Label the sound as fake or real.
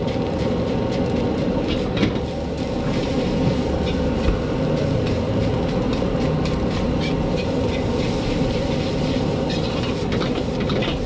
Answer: real